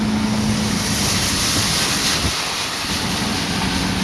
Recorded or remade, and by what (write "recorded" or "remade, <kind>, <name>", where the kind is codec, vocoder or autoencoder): recorded